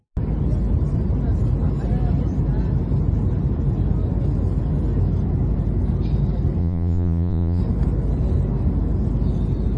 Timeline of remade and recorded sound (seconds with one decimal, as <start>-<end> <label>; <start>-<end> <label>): 0.0-6.6 recorded; 6.6-7.6 remade; 7.6-9.8 recorded